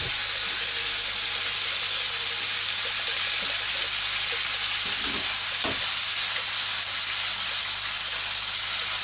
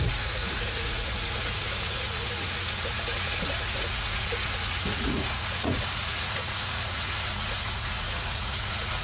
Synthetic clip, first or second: second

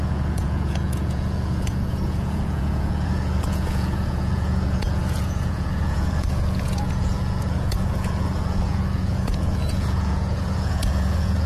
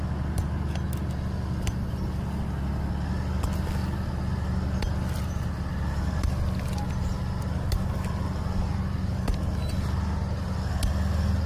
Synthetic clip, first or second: first